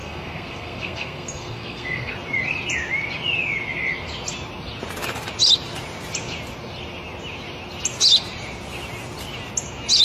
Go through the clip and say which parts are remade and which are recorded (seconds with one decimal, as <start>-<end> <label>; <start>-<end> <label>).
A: 0.0-2.1 remade; 2.1-10.0 recorded